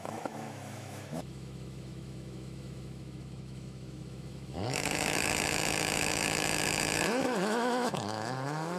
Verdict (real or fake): fake